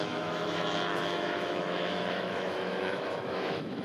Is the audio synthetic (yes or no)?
yes